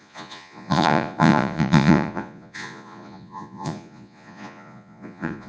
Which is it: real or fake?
fake